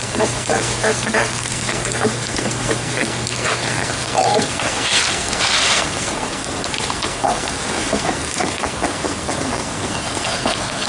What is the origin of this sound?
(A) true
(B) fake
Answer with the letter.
B